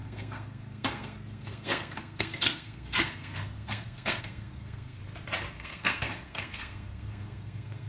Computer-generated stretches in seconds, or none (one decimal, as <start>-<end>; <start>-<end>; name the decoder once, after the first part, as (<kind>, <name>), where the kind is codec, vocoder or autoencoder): 0.0-5.0 (codec, SNAC); 5.5-7.9